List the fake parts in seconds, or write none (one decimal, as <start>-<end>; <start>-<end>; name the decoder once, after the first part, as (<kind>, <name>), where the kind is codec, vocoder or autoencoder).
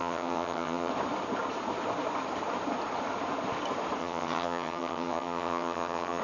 0.0-0.9 (vocoder, HiFi-GAN); 4.0-6.2